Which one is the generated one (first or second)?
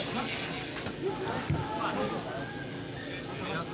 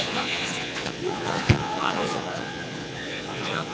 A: second